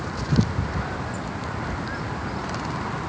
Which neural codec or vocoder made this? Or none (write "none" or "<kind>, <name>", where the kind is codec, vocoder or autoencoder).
none